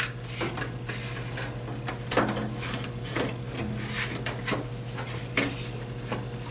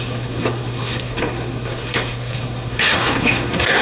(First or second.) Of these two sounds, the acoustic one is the first